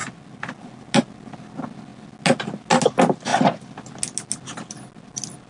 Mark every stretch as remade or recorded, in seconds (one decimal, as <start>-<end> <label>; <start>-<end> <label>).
0.0-5.5 recorded